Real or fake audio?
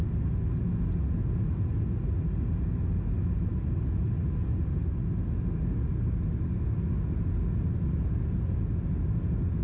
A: real